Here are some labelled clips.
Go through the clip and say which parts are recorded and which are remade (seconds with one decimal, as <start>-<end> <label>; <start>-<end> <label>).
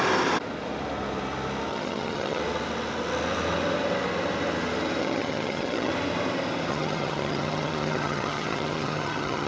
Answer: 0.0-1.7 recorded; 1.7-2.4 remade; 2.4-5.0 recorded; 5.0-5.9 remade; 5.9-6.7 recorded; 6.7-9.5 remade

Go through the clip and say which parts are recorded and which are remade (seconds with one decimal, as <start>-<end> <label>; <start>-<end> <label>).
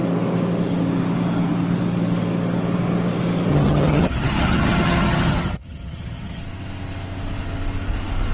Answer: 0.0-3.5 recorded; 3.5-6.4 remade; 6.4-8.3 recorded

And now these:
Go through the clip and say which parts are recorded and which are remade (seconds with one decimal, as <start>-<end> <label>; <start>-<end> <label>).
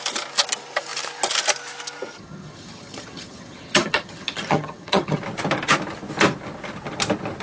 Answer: 0.0-2.1 recorded; 2.1-5.2 remade; 5.2-7.4 recorded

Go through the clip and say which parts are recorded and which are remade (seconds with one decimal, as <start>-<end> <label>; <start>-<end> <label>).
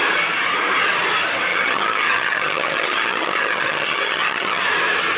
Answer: 0.0-1.5 recorded; 1.5-4.6 remade; 4.6-5.2 recorded